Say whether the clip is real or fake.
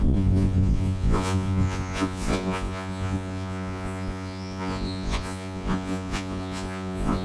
fake